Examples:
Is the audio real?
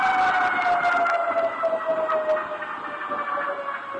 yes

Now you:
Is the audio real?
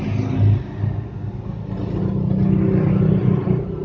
yes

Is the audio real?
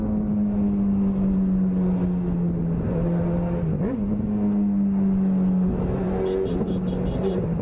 yes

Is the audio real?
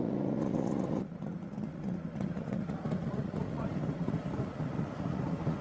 no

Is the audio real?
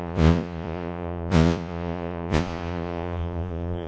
no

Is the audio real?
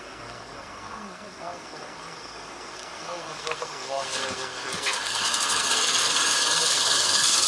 no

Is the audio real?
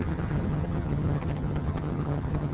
no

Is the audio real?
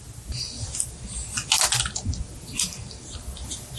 yes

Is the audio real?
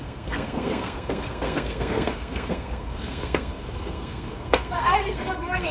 no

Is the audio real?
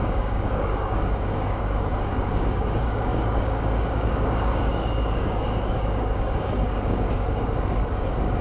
no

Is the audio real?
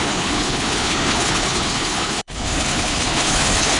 no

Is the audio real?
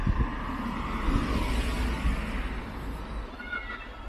yes